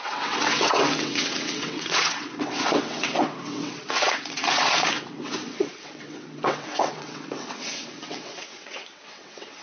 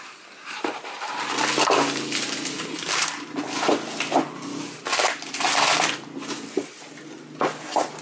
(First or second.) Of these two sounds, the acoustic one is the second